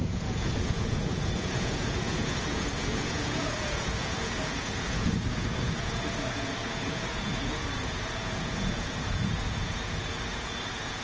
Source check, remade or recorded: remade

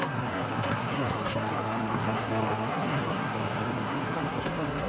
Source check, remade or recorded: remade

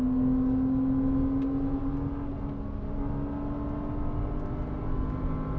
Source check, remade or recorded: recorded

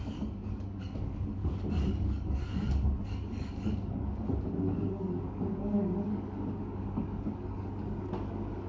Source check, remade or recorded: remade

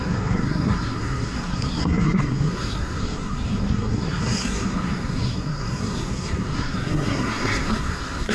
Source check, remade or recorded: remade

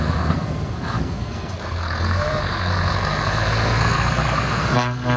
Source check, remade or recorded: remade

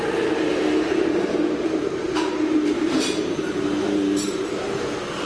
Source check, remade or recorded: remade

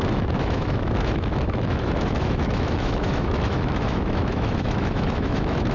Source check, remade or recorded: remade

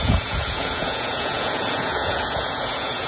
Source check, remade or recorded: remade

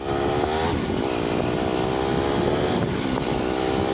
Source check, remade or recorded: recorded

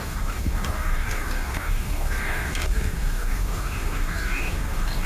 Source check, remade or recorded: remade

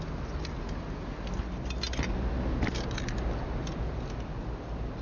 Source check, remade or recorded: recorded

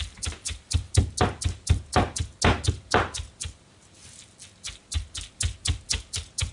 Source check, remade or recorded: recorded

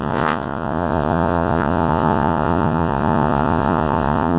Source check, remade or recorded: remade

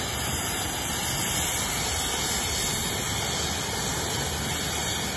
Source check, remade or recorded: recorded